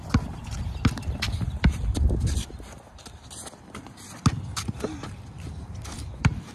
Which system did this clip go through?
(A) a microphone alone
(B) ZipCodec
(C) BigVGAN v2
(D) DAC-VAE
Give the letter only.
A